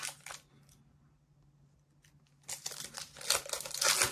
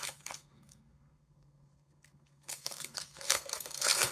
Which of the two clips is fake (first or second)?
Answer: second